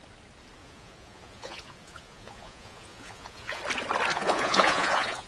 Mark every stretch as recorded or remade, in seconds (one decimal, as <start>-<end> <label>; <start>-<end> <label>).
0.0-0.6 recorded; 0.6-3.6 remade; 3.6-4.1 recorded; 4.1-5.3 remade